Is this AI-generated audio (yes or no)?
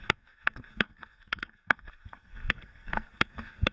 yes